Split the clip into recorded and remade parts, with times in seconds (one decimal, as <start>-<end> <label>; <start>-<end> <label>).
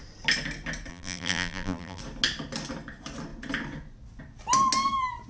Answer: 0.0-0.9 recorded; 0.9-2.0 remade; 2.0-5.3 recorded